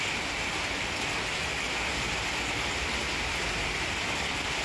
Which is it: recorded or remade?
remade